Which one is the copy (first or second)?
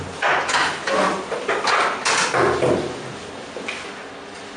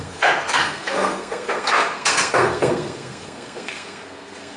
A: second